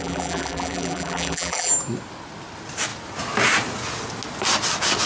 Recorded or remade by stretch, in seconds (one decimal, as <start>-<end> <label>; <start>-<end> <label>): 0.0-1.7 remade; 1.7-5.1 recorded